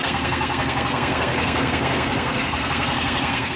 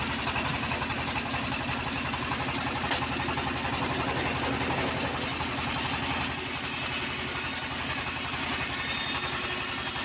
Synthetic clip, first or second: first